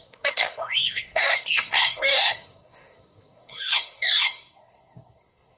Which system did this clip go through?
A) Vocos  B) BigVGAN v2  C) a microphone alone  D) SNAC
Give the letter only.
D